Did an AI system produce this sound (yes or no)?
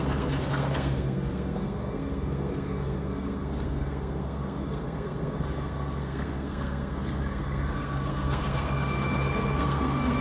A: yes